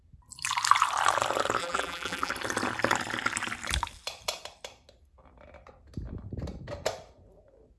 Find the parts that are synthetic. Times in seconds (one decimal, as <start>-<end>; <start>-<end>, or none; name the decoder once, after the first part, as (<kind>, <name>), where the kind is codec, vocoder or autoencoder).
1.6-2.3 (vocoder, BigVGAN v2)